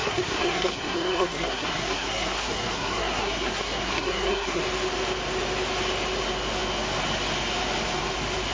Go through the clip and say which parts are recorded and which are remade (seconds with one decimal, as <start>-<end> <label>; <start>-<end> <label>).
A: 0.0-4.6 remade; 4.6-8.5 recorded